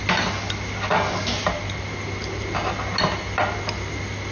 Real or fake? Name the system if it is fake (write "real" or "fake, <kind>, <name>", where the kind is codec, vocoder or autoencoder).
real